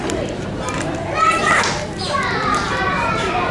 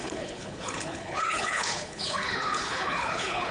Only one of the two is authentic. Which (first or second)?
first